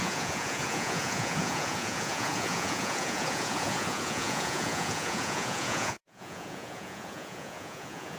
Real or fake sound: fake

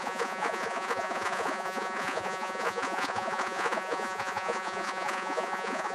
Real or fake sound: fake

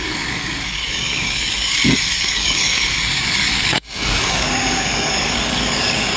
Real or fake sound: fake